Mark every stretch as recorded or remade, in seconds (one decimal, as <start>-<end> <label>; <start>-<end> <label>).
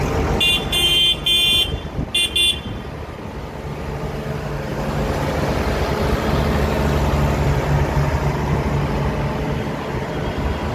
0.0-10.7 recorded